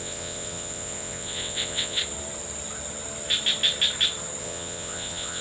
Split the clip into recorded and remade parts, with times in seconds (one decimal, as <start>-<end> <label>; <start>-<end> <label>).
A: 0.0-2.0 remade; 2.0-4.4 recorded; 4.4-5.4 remade